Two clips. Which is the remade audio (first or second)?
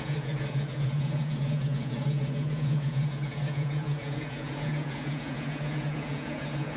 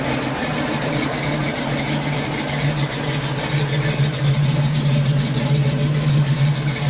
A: first